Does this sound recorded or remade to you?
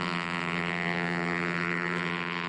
remade